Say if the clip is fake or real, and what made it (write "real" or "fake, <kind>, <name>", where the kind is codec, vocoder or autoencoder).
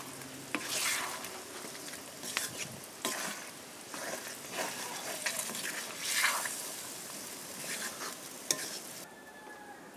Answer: real